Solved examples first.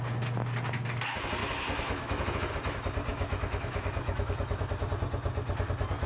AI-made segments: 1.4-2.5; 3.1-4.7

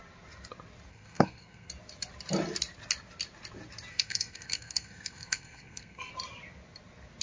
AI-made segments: 0.9-1.7; 3.9-6.1